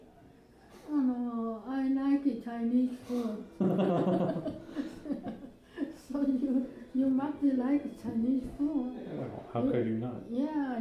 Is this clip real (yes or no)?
yes